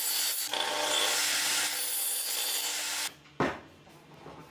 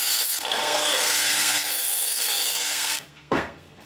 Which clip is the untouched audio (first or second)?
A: first